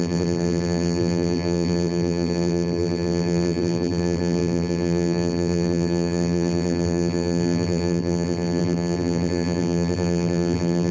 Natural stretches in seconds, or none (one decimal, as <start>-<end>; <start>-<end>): none